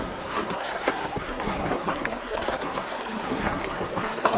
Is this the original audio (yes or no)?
no